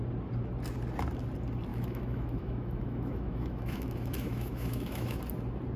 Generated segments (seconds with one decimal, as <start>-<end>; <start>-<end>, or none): 1.7-5.2